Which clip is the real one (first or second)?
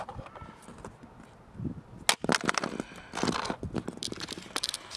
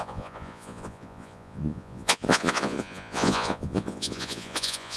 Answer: first